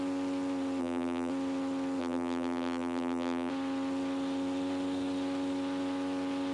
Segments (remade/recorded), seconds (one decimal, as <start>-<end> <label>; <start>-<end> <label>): 0.0-0.8 recorded; 0.8-1.3 remade; 1.3-2.0 recorded; 2.0-3.5 remade; 3.5-6.5 recorded